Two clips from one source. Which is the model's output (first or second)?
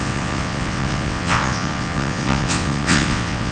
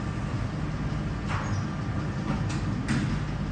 first